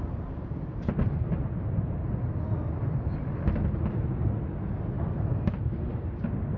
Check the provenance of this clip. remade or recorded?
recorded